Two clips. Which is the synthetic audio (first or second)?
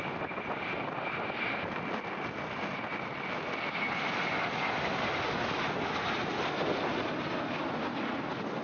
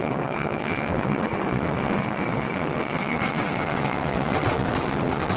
second